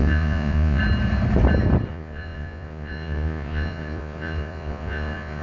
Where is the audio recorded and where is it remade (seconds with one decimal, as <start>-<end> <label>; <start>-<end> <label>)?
0.0-0.8 remade; 0.8-1.9 recorded; 1.9-5.4 remade